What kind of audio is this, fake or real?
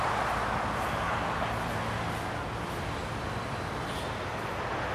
real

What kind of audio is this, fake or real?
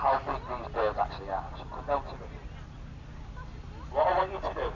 real